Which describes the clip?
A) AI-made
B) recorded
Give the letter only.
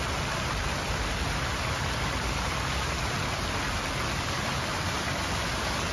B